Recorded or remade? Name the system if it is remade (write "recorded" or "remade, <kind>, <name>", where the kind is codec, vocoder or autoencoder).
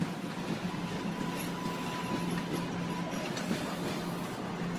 recorded